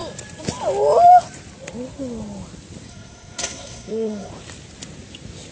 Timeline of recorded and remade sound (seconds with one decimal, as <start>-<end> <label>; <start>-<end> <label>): 0.0-2.9 recorded; 2.9-4.3 remade; 4.3-5.5 recorded